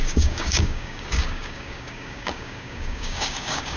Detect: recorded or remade remade